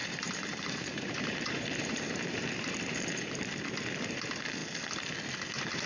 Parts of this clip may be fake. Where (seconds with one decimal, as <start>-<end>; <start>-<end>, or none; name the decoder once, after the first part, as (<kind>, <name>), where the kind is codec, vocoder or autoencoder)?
0.0-3.5 (vocoder, BigVGAN v2)

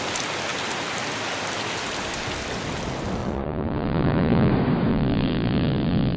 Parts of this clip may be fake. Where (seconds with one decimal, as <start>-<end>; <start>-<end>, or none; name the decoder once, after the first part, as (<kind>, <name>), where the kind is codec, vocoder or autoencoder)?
3.2-4.5 (vocoder, Vocos); 4.9-6.2

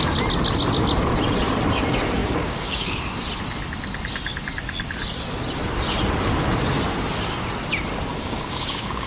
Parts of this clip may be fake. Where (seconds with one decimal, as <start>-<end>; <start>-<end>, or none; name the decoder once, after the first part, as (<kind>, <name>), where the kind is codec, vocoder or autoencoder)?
2.2-3.0 (codec, DAC); 8.1-9.1

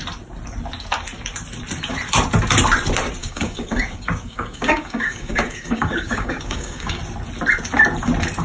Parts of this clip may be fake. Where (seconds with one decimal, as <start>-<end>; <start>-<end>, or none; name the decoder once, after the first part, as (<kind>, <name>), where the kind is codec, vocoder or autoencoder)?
3.2-7.0 (codec, DAC)